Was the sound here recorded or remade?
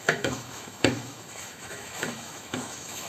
remade